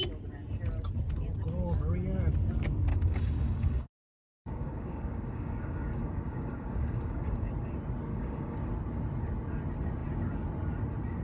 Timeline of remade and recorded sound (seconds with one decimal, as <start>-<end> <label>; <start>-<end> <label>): 0.0-2.9 recorded; 2.9-7.5 remade; 7.5-8.1 recorded; 8.1-8.7 remade; 8.7-11.2 recorded